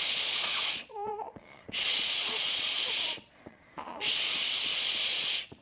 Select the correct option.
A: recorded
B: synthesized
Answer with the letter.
B